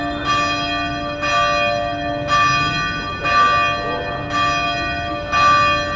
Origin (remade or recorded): recorded